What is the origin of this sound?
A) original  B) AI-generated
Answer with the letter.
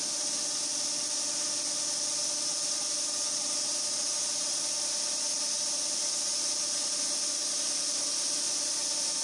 A